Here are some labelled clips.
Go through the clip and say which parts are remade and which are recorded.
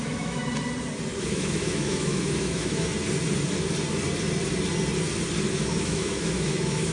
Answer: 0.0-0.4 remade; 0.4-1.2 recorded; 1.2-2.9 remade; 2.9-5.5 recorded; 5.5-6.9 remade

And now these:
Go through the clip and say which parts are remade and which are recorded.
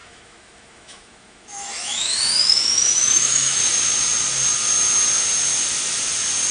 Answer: 0.0-3.6 remade; 3.6-6.5 recorded